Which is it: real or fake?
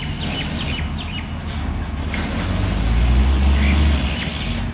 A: real